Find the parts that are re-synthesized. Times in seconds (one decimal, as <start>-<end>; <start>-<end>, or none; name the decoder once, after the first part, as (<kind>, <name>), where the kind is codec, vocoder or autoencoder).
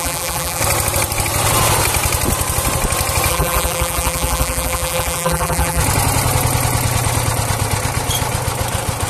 0.0-0.6 (vocoder, BigVGAN v2); 3.3-5.8